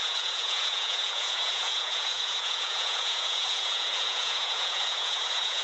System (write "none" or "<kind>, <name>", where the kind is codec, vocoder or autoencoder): vocoder, Vocos